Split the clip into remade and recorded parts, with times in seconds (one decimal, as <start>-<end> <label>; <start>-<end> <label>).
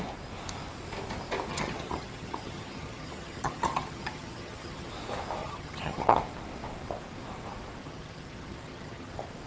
0.0-1.5 recorded; 1.5-4.9 remade; 4.9-5.4 recorded; 5.4-6.2 remade; 6.2-7.8 recorded; 7.8-9.1 remade; 9.1-9.5 recorded